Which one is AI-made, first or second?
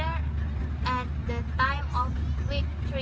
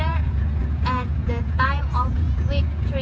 second